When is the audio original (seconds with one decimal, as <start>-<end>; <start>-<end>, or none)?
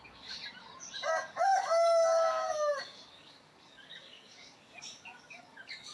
0.4-1.1